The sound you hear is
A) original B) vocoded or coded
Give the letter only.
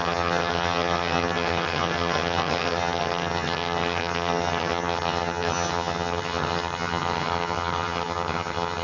B